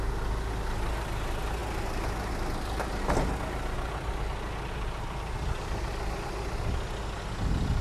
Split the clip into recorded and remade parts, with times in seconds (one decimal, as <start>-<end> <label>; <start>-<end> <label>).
0.0-7.8 recorded